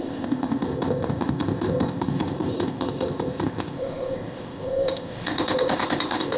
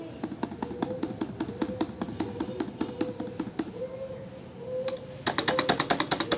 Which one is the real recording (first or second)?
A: second